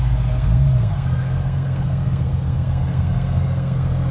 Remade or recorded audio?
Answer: remade